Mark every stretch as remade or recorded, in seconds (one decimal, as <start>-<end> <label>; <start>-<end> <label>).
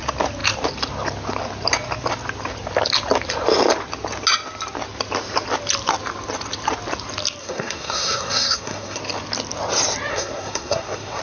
0.0-7.4 recorded; 7.4-9.0 remade; 9.0-10.1 recorded; 10.1-11.2 remade